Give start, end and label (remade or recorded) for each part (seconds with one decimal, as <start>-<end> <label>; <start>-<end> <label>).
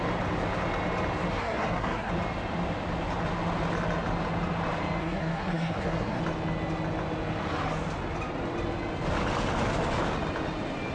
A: 0.0-1.3 recorded; 1.3-2.1 remade; 2.1-5.0 recorded; 5.0-6.2 remade; 6.2-10.9 recorded